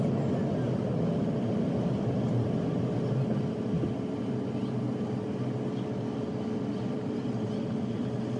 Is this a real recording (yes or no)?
yes